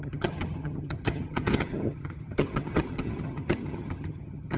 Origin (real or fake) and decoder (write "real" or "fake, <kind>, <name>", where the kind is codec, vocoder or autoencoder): fake, vocoder, HiFi-GAN